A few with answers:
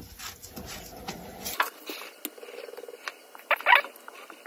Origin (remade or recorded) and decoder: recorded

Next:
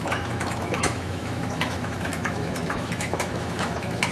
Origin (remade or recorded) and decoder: remade, autoencoder, DAC-VAE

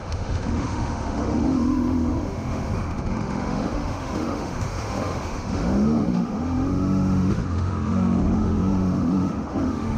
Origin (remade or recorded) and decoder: remade, autoencoder, DAC-VAE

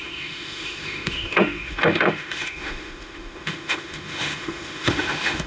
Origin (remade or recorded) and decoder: remade, autoencoder, DAC-VAE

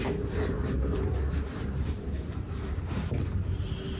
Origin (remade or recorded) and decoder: recorded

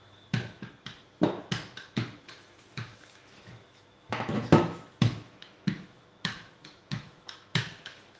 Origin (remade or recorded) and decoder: remade, autoencoder, DAC-VAE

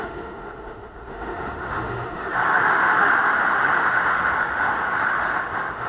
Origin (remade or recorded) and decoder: remade, autoencoder, DAC-VAE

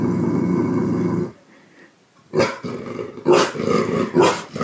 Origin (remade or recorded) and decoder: recorded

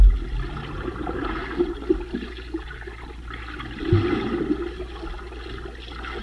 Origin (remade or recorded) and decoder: recorded